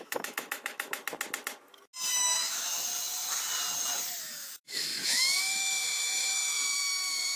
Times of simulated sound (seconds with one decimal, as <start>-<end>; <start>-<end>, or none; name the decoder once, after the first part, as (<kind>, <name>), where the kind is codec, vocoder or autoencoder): 0.0-1.0 (autoencoder, DAC-VAE); 2.1-2.9; 4.2-7.4